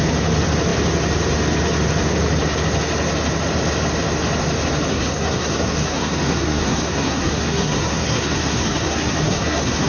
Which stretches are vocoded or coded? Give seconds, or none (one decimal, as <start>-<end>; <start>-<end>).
4.9-9.9